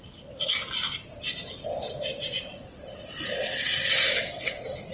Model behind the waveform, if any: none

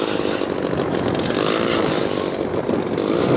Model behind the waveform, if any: none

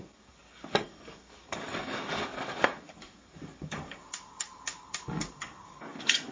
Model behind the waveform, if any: codec, DAC